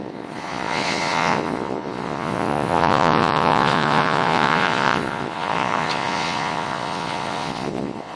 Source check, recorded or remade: remade